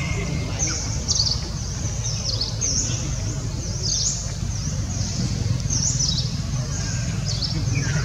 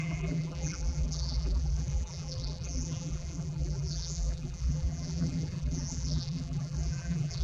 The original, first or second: first